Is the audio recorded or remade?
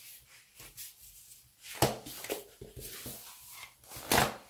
recorded